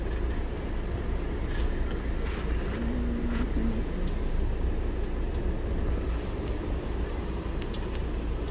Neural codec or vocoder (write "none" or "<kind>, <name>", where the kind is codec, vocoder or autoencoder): none